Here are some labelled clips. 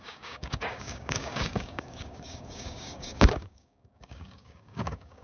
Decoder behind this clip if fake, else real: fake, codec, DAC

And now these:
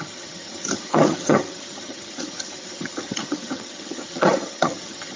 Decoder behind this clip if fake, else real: fake, vocoder, HiFi-GAN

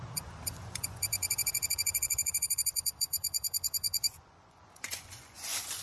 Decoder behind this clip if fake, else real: fake, vocoder, Vocos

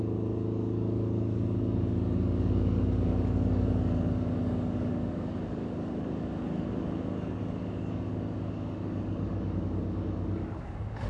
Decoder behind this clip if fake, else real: fake, codec, DAC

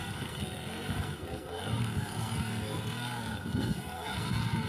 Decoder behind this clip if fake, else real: fake, codec, SNAC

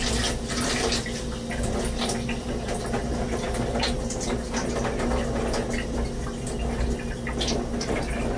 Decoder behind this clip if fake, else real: real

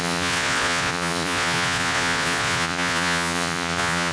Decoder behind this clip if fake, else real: fake, vocoder, Vocos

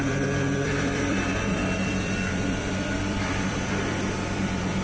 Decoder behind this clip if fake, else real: fake, vocoder, BigVGAN v2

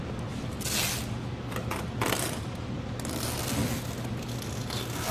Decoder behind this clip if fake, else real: real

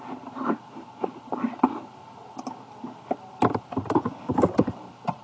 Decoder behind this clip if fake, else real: real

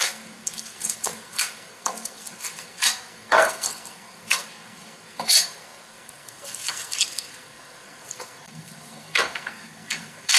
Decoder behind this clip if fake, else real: fake, codec, SNAC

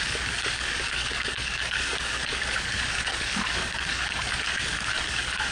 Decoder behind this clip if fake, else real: fake, codec, DAC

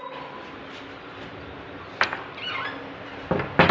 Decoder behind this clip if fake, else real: fake, vocoder, BigVGAN v2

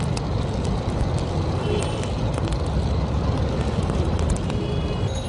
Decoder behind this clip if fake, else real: real